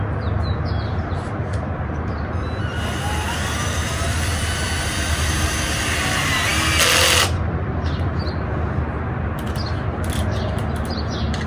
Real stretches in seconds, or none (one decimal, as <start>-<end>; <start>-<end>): 0.0-11.5